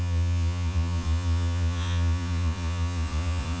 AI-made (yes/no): yes